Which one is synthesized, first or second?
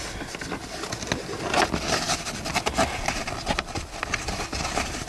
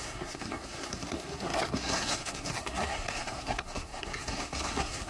second